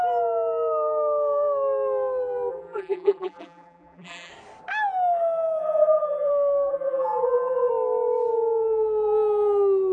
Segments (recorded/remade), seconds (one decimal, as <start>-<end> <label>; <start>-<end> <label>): 0.0-2.5 recorded; 2.5-4.3 remade; 4.3-5.6 recorded; 5.6-6.3 remade; 6.3-6.7 recorded; 6.7-7.7 remade; 7.7-9.9 recorded